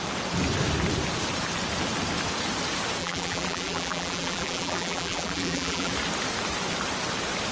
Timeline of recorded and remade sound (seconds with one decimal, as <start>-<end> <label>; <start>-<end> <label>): 0.0-3.0 recorded; 3.0-5.9 remade; 5.9-7.5 recorded